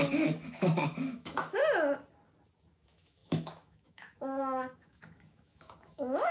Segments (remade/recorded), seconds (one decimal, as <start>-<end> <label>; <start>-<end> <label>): 0.0-1.6 remade; 1.6-2.7 recorded; 2.7-6.3 remade